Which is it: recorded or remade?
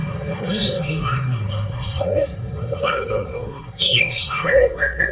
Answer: remade